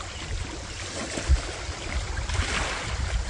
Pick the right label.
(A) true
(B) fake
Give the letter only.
A